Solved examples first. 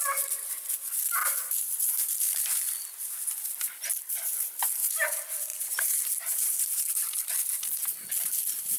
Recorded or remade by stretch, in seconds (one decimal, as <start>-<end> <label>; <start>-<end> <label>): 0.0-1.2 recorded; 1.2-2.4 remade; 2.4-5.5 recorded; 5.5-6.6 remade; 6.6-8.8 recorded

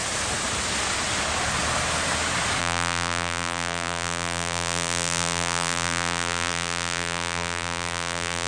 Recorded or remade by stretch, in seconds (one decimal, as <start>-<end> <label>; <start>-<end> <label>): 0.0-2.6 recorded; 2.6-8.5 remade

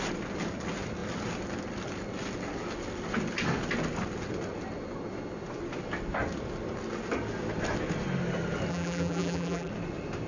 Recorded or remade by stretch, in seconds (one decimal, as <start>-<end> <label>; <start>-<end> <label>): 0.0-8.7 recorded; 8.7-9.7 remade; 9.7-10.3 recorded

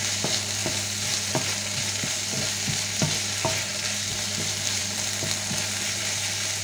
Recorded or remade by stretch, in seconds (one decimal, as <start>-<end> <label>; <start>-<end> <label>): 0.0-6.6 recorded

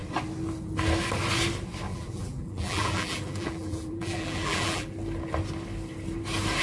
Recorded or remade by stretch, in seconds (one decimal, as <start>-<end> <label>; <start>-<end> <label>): 0.0-1.9 recorded; 1.9-4.9 remade; 4.9-6.6 recorded

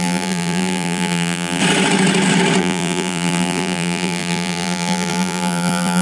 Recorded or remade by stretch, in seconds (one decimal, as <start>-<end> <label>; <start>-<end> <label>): 0.0-1.6 remade; 1.6-2.6 recorded; 2.6-6.0 remade

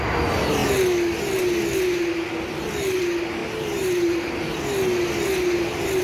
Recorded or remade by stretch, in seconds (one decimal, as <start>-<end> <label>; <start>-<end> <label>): 0.0-3.4 recorded; 3.4-4.4 remade; 4.4-6.0 recorded

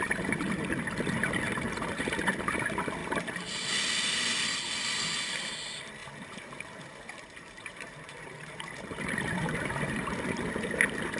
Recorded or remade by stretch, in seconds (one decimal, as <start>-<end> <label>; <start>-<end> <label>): 0.0-1.2 recorded; 1.2-2.3 remade; 2.3-6.0 recorded; 6.0-10.2 remade; 10.2-11.2 recorded